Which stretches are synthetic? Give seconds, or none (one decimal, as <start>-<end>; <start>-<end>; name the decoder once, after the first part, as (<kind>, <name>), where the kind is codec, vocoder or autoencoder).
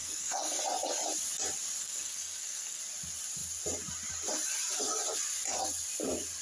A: 0.0-0.6 (codec, SNAC); 1.8-2.8